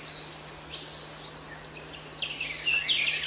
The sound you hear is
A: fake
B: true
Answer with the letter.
B